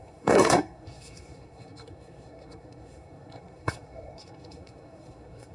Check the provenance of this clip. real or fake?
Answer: fake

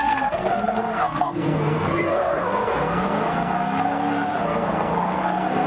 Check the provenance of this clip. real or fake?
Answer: fake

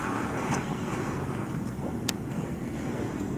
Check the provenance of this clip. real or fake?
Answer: fake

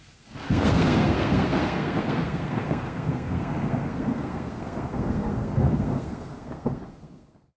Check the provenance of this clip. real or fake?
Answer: fake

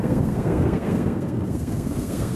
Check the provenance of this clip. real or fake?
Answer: fake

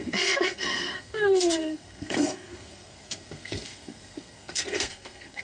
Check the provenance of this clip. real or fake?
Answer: fake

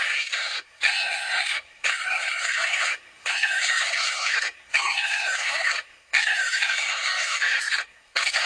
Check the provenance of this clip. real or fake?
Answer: fake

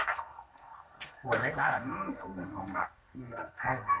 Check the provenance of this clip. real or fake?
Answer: fake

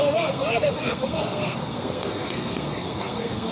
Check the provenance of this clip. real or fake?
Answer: fake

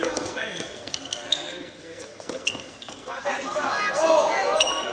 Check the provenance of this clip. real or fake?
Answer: fake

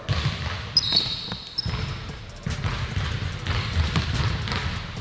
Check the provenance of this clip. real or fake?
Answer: real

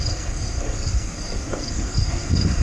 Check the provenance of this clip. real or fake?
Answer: fake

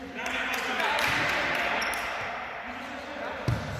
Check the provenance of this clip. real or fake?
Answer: real